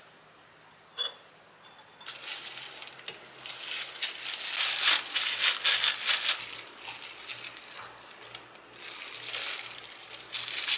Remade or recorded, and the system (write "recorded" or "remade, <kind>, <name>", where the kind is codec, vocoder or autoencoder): recorded